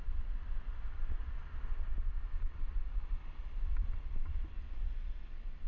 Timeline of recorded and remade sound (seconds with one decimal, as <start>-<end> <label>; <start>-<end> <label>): 0.0-0.7 recorded; 0.7-1.3 remade; 1.3-5.7 recorded